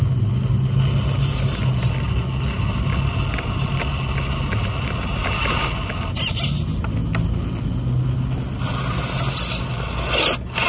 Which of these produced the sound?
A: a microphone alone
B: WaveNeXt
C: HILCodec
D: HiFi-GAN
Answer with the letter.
A